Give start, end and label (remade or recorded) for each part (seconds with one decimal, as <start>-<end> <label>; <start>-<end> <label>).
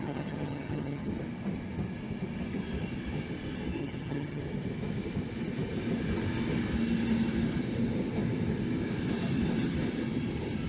0.0-1.1 remade; 1.1-3.8 recorded; 3.8-4.4 remade; 4.4-10.7 recorded